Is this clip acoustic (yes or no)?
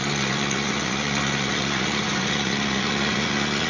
no